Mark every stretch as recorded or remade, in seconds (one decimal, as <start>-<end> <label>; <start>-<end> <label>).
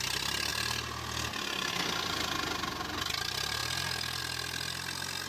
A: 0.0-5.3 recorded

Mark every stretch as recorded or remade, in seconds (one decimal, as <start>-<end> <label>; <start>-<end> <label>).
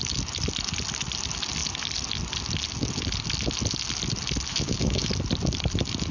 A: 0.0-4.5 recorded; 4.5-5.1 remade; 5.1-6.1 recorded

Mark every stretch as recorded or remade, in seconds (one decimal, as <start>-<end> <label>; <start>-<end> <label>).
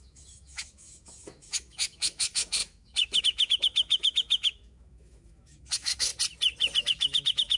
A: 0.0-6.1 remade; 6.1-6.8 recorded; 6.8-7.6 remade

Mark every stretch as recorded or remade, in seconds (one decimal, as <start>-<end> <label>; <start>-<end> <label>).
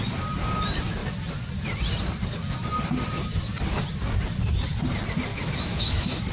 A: 0.0-5.3 recorded; 5.3-6.3 remade